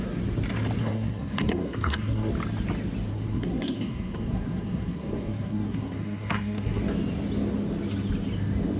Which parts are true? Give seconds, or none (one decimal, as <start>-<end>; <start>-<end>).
0.0-0.8; 2.3-3.1; 6.8-8.8